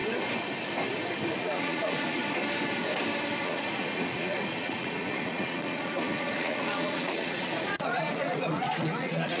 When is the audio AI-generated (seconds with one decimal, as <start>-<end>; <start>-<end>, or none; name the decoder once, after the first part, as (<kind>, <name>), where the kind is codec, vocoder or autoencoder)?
1.3-2.2 (vocoder, Vocos); 3.4-9.4

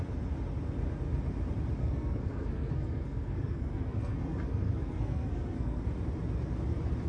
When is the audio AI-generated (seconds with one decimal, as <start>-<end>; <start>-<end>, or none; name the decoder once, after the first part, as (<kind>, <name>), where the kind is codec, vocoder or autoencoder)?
1.8-5.8 (codec, SNAC)

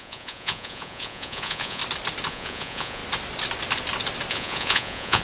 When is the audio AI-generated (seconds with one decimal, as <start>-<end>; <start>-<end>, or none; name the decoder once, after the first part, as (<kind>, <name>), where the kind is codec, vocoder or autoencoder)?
0.0-1.8 (vocoder, Vocos); 2.3-3.0; 4.3-5.2